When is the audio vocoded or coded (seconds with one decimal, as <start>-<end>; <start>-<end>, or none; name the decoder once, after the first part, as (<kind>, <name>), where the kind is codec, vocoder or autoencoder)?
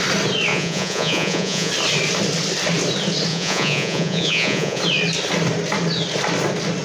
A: 0.5-1.7 (vocoder, Vocos); 3.3-4.8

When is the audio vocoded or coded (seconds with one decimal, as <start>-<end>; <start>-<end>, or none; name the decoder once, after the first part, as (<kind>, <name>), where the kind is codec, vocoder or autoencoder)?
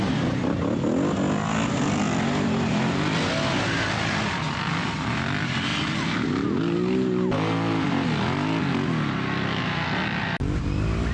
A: none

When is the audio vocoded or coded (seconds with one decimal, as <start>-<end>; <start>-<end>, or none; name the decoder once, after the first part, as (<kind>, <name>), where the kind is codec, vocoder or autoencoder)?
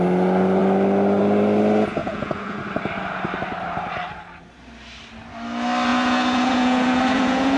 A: 2.0-2.6 (vocoder, Vocos); 5.9-7.6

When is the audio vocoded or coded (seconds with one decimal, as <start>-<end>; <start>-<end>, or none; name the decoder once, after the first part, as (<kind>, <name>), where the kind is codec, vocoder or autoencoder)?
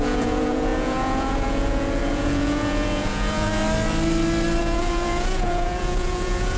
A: 0.0-3.6 (vocoder, Vocos); 4.6-6.6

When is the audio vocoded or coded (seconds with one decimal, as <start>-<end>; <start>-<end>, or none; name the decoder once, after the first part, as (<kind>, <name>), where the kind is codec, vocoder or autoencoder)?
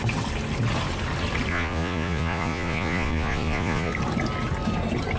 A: 1.5-3.9 (vocoder, Vocos)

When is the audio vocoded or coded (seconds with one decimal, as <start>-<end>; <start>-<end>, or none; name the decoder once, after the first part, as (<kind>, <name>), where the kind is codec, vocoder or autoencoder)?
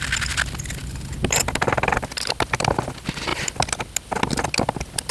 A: none